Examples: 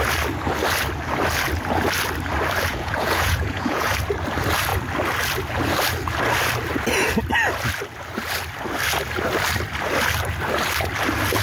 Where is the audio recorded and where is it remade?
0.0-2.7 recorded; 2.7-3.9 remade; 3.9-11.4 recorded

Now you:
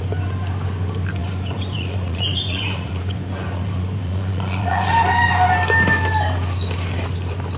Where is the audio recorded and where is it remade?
0.0-1.2 recorded; 1.2-4.9 remade; 4.9-7.6 recorded

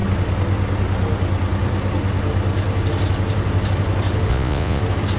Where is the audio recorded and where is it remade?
0.0-4.3 recorded; 4.3-4.8 remade; 4.8-5.2 recorded

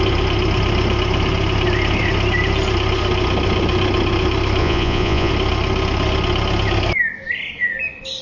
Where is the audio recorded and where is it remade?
0.0-4.6 recorded; 4.6-5.3 remade; 5.3-8.2 recorded

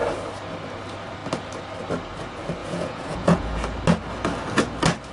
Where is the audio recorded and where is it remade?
0.0-2.6 recorded; 2.6-3.6 remade; 3.6-5.1 recorded

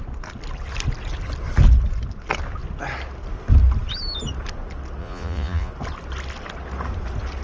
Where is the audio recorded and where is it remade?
0.0-5.0 recorded; 5.0-5.7 remade; 5.7-7.4 recorded

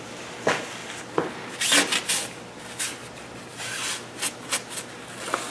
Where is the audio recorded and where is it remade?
0.0-5.5 recorded